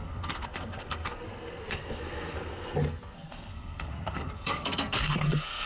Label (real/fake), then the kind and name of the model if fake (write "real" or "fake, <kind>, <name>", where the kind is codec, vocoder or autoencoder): fake, codec, SNAC